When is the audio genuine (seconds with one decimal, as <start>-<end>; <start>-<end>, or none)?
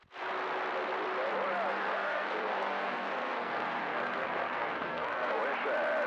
0.0-1.7; 5.4-6.1